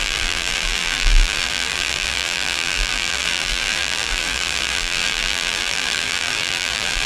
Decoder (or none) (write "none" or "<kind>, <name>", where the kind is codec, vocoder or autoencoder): vocoder, BigVGAN v2